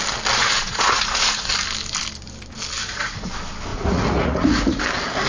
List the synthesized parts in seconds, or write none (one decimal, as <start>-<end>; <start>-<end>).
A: 0.4-1.5; 2.8-3.3; 3.7-4.8